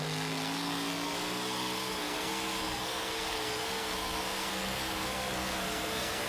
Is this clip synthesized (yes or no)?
yes